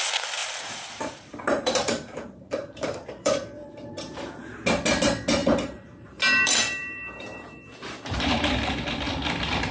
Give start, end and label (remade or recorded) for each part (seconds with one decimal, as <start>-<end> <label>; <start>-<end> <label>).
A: 0.0-0.4 recorded; 0.4-4.4 remade; 4.4-5.4 recorded; 5.4-8.7 remade; 8.7-9.7 recorded